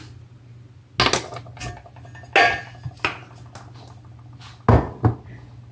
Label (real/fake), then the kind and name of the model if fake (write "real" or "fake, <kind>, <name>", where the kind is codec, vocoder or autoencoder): real